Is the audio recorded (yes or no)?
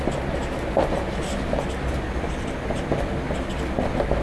yes